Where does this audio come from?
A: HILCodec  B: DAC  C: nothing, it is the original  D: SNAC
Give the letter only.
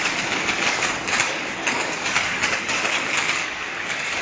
B